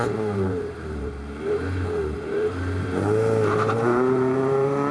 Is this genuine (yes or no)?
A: no